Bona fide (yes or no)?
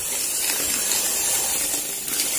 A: yes